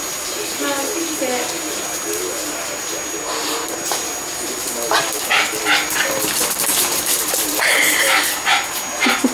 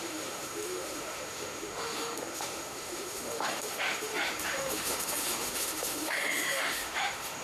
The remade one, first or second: second